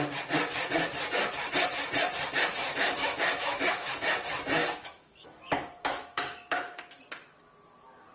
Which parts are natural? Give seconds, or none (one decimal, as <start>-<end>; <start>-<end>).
0.0-2.6; 4.1-4.6; 6.8-8.1

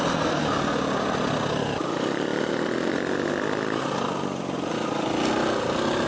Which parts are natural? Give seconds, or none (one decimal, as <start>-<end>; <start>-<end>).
0.0-6.1

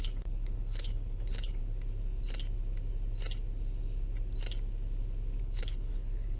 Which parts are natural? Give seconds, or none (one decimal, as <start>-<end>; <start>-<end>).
1.6-5.4

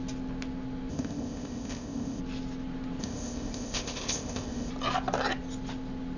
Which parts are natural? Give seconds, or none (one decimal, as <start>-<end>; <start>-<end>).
0.0-0.9; 2.2-3.0; 4.7-6.2

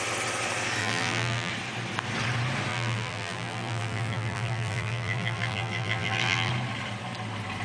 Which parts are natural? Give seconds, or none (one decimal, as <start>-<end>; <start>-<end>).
0.0-0.8; 1.5-2.7; 6.5-7.6

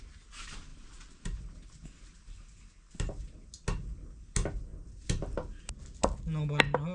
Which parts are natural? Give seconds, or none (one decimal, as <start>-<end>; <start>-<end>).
0.0-0.7; 1.4-4.7; 5.5-6.9